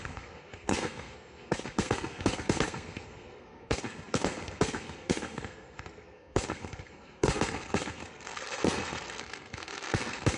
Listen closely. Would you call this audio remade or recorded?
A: remade